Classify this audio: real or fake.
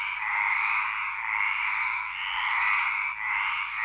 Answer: real